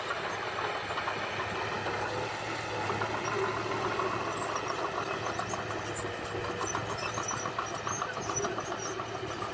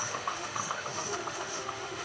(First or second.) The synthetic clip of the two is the second